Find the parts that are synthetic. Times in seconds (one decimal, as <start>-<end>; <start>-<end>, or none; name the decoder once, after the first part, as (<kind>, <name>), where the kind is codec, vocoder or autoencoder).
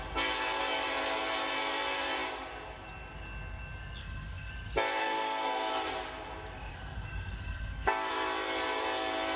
4.0-4.5 (codec, SNAC); 5.0-5.7; 6.7-8.1